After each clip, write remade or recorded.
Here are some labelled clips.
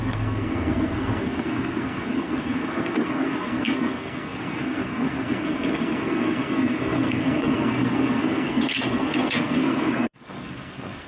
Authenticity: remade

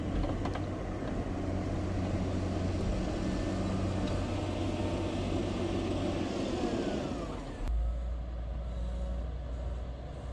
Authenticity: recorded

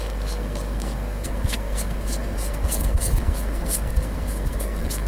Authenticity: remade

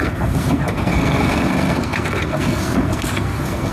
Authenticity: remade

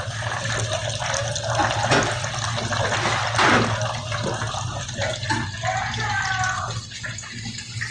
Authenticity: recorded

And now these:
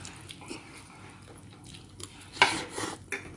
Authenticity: recorded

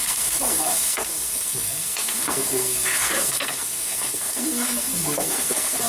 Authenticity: remade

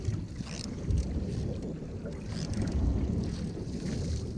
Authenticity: recorded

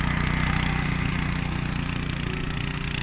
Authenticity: recorded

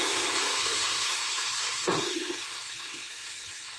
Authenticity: remade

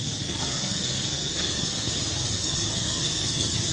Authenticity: remade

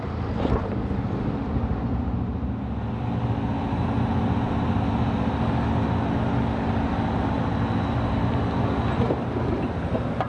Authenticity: recorded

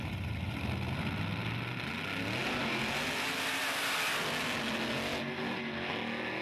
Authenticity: recorded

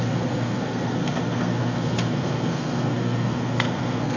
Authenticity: remade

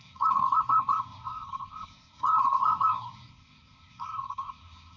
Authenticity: remade